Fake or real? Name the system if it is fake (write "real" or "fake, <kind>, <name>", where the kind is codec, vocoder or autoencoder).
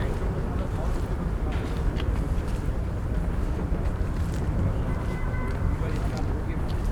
fake, vocoder, BigVGAN v2